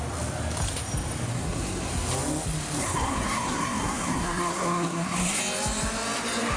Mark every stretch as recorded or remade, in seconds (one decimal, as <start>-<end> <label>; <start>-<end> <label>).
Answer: 0.0-1.3 recorded; 1.3-1.9 remade; 1.9-2.8 recorded; 2.8-5.4 remade; 5.4-6.6 recorded

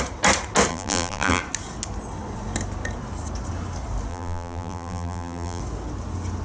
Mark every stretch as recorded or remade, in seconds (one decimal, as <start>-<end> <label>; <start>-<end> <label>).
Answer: 0.0-0.7 recorded; 0.7-1.4 remade; 1.4-4.1 recorded; 4.1-5.6 remade; 5.6-6.4 recorded

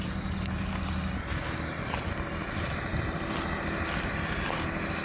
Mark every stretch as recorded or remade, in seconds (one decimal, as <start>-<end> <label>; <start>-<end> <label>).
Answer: 0.0-5.0 recorded

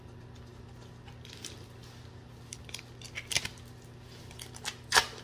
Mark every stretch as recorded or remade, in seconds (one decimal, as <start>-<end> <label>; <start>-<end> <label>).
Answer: 0.0-5.2 recorded

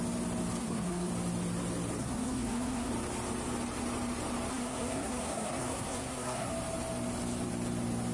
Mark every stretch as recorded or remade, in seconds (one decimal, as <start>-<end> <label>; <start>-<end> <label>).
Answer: 0.0-0.6 recorded; 0.6-1.1 remade; 1.1-2.0 recorded; 2.0-2.9 remade; 2.9-4.5 recorded; 4.5-6.5 remade; 6.5-8.1 recorded

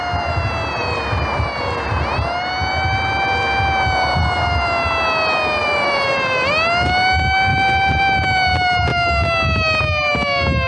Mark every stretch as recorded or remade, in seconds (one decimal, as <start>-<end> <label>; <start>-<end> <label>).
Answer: 0.0-0.8 recorded; 0.8-1.9 remade; 1.9-5.6 recorded; 5.6-6.5 remade; 6.5-7.5 recorded; 7.5-8.0 remade; 8.0-10.7 recorded

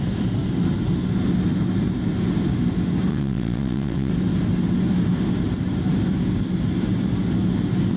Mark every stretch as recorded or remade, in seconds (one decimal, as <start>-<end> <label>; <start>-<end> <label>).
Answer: 0.0-3.1 recorded; 3.1-4.1 remade; 4.1-8.0 recorded

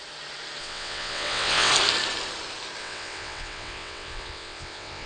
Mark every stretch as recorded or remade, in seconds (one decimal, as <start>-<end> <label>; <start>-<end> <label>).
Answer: 0.0-0.6 recorded; 0.6-1.7 remade; 1.7-2.8 recorded; 2.8-5.1 remade